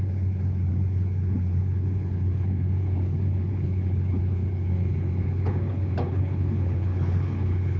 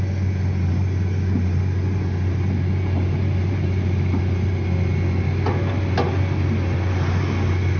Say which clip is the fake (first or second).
first